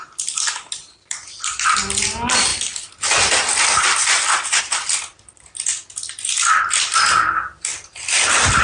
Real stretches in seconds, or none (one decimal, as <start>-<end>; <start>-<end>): 0.0-8.6